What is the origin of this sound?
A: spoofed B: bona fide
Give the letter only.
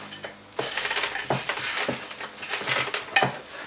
B